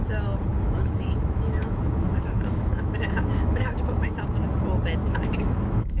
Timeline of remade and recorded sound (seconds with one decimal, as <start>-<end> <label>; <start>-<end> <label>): 0.0-0.5 recorded; 0.5-4.1 remade; 4.1-5.0 recorded; 5.0-6.0 remade